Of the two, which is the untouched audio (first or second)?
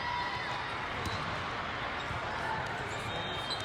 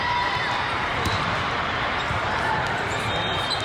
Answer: first